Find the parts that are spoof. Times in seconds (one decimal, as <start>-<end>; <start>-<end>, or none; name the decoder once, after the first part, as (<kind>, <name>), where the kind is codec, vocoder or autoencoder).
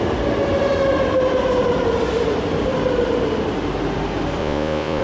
4.4-5.0 (vocoder, Vocos)